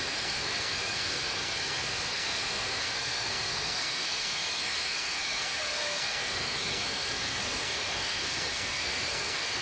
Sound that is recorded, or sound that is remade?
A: remade